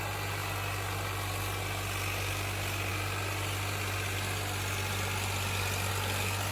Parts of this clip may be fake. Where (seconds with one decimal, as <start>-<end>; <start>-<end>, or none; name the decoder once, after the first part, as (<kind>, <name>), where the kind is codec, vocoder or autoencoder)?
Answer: none